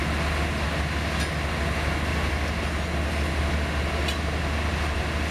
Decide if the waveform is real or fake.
real